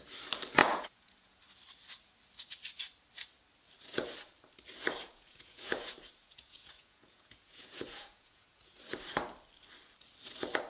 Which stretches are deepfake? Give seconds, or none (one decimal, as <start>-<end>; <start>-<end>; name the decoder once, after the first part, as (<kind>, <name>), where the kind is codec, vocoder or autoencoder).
0.6-1.4 (vocoder, Vocos); 5.0-8.8